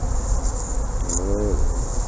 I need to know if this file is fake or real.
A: real